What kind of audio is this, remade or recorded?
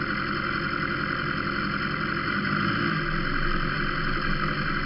recorded